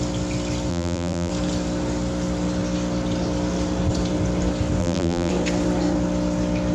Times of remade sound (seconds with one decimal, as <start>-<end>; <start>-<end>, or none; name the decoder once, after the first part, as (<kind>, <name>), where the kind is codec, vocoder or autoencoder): 0.7-1.3 (vocoder, BigVGAN v2); 4.8-5.3